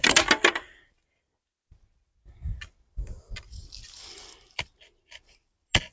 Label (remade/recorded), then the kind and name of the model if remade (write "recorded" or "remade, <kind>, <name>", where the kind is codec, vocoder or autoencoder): recorded